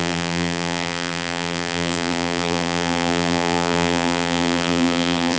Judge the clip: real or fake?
fake